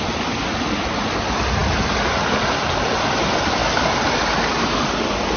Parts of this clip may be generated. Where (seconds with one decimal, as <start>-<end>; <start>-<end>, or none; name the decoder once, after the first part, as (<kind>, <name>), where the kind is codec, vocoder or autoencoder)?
none